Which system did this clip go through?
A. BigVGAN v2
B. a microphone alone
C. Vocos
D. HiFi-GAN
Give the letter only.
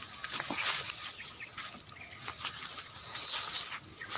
B